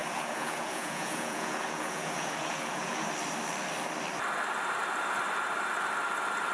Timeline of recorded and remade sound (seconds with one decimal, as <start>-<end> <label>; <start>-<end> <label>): 0.0-3.1 remade; 3.1-6.5 recorded